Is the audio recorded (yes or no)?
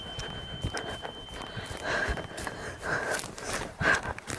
no